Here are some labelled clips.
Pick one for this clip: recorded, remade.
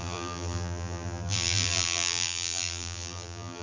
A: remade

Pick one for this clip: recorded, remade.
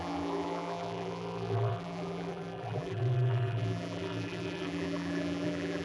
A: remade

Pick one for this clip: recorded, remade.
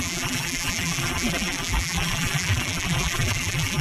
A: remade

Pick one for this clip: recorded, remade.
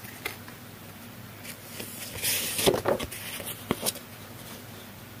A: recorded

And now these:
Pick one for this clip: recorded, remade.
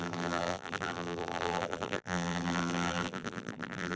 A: remade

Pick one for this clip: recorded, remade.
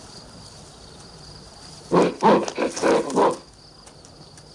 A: recorded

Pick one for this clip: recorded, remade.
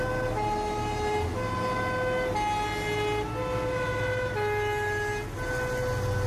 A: recorded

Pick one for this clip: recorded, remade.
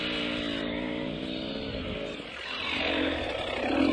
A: recorded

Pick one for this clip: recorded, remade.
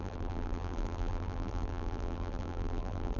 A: remade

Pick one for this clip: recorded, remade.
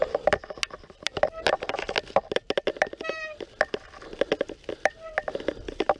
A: recorded